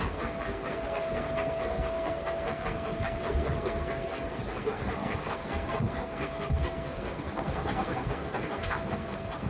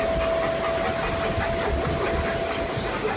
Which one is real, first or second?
second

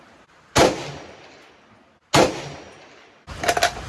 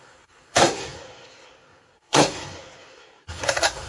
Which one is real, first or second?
first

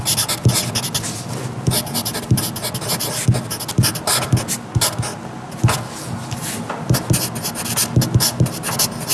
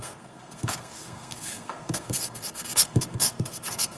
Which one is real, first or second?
first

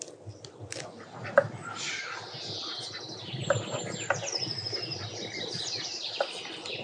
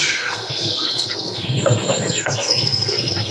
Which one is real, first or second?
first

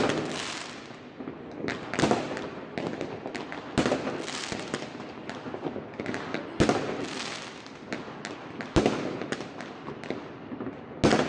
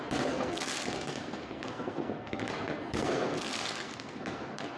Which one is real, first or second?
first